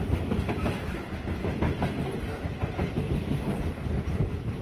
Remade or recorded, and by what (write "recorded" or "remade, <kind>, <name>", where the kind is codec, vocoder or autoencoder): recorded